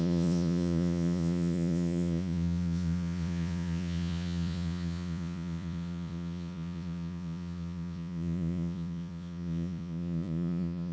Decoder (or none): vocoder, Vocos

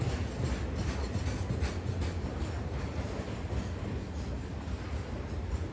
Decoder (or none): none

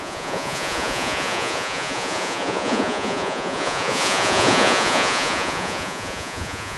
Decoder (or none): vocoder, Vocos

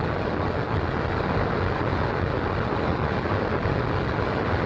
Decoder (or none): none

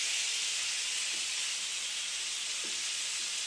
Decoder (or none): none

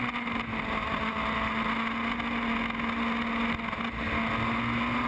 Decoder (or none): none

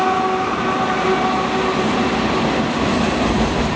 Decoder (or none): none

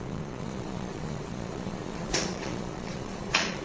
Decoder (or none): vocoder, Vocos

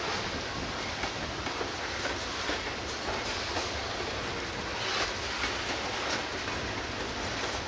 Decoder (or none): none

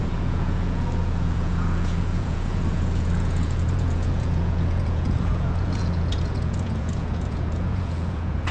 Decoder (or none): vocoder, Vocos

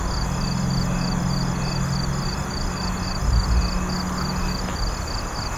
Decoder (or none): none